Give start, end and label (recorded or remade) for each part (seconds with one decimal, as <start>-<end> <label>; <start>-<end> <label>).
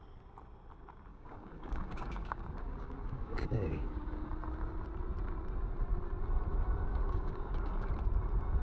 0.0-1.1 recorded; 1.1-4.3 remade; 4.3-6.9 recorded; 6.9-7.9 remade; 7.9-8.6 recorded